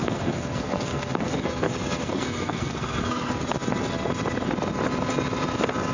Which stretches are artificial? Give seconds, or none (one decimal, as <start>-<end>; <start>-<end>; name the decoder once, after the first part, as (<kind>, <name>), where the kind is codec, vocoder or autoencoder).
0.0-3.3 (codec, SNAC)